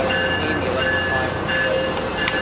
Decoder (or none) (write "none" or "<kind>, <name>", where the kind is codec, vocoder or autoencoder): none